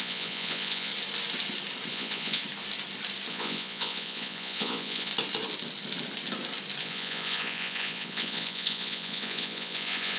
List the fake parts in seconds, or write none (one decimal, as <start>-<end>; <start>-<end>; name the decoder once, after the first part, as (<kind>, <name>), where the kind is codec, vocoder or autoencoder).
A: 0.0-0.9 (vocoder, Vocos); 1.9-2.4; 3.3-5.1; 6.8-10.2